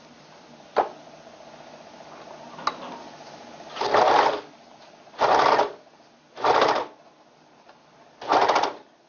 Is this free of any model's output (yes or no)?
yes